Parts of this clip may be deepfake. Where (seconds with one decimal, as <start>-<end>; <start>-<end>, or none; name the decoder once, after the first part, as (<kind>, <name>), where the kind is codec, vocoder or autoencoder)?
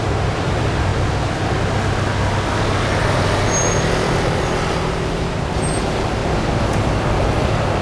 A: 0.0-0.9 (vocoder, BigVGAN v2); 4.2-6.2; 7.2-7.8